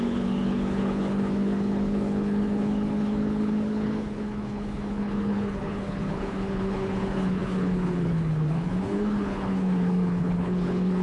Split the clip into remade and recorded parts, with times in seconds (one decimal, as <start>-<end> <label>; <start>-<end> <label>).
0.0-11.0 remade